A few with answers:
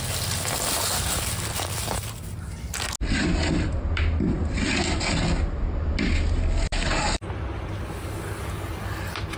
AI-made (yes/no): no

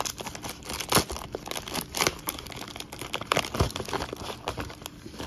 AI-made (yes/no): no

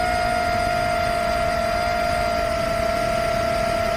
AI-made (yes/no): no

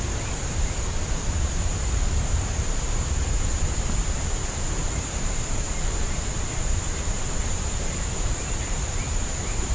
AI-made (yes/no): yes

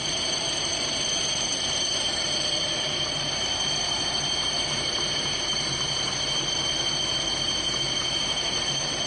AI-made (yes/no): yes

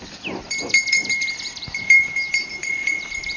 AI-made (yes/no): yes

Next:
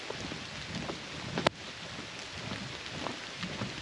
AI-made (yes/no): no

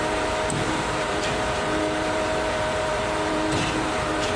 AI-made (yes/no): yes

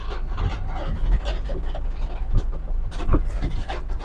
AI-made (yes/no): no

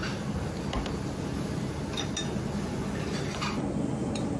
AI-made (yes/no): no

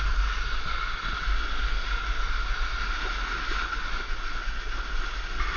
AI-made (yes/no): no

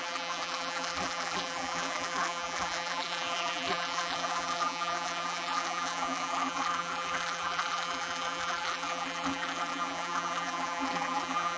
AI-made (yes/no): yes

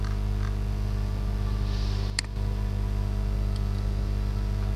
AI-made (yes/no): no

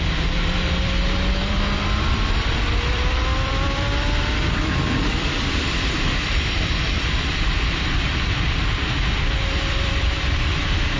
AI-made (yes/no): yes